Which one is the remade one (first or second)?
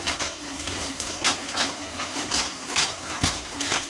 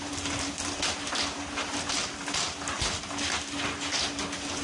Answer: first